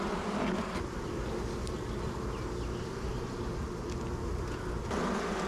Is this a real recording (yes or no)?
yes